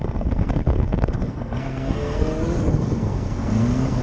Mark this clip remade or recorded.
remade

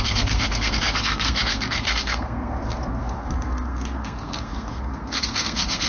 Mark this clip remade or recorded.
remade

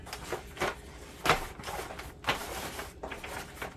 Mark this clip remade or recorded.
recorded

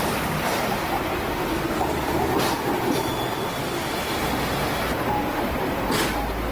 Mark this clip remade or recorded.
recorded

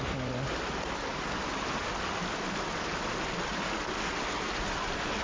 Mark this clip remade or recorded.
recorded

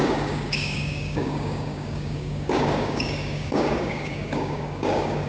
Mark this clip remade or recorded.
remade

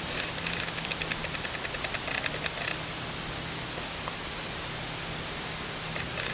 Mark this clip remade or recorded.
recorded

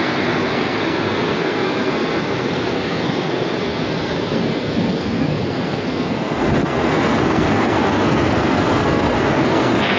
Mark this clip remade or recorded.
remade